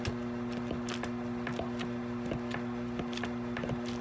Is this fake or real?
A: real